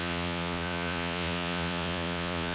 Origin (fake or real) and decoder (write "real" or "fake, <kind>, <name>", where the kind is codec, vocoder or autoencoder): fake, vocoder, Vocos